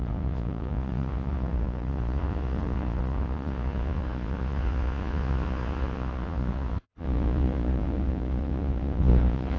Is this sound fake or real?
fake